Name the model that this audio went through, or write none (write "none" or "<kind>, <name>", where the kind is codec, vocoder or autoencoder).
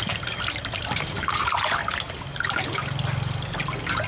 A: none